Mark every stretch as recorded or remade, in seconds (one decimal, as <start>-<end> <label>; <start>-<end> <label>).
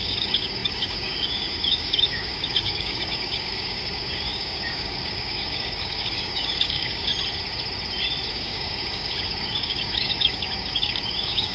0.0-7.1 remade; 7.1-8.3 recorded; 8.3-11.5 remade